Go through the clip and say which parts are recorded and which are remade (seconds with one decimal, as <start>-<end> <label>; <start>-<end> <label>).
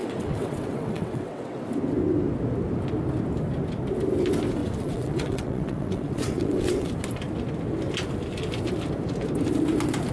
0.0-1.6 remade; 1.6-4.6 recorded; 4.6-6.9 remade; 6.9-10.1 recorded